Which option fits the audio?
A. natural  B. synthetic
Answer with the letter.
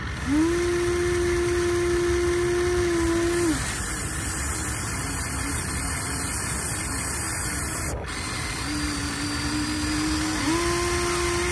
A